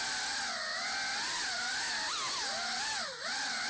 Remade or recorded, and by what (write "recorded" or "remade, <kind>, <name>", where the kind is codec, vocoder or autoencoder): recorded